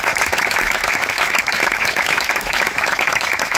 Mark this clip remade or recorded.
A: remade